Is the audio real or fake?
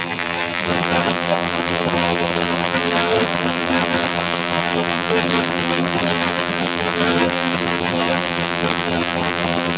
fake